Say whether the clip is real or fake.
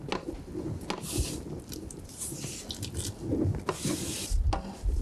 real